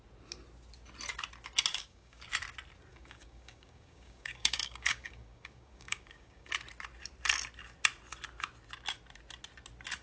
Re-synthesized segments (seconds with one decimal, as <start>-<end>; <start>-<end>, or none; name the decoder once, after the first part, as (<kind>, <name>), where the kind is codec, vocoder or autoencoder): 1.7-2.2 (codec, DAC); 2.9-6.5